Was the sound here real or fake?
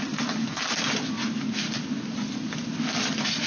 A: real